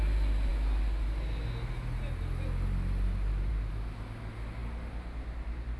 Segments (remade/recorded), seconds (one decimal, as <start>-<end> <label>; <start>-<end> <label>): 0.0-5.8 recorded